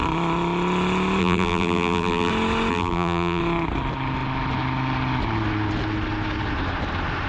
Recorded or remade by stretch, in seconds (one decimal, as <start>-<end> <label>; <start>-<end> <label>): 0.0-1.2 recorded; 1.2-2.3 remade; 2.3-2.7 recorded; 2.7-3.4 remade; 3.4-7.3 recorded